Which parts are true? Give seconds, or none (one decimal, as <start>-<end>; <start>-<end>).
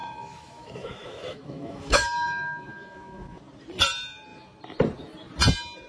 3.4-5.9